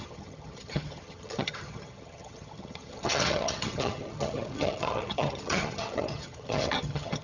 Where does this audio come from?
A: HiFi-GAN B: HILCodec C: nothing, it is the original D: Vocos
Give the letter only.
A